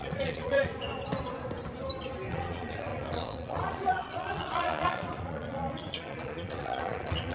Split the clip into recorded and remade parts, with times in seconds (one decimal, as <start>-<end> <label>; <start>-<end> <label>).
0.0-0.7 remade; 0.7-2.3 recorded; 2.3-7.3 remade